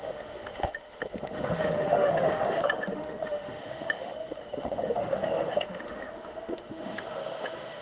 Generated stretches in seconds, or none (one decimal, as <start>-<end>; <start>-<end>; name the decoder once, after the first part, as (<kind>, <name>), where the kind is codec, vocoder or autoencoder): 0.0-7.8 (autoencoder, DAC-VAE)